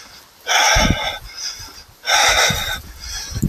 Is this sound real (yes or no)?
yes